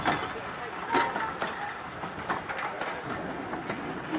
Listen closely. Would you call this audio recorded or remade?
recorded